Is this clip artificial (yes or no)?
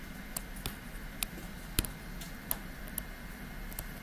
no